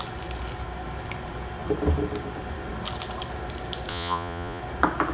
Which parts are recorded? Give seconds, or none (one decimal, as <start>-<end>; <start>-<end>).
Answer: 0.0-3.9; 4.6-5.1